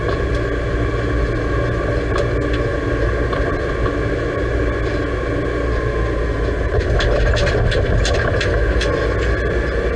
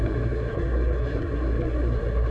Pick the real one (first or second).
first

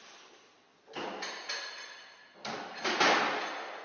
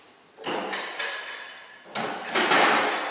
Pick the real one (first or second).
first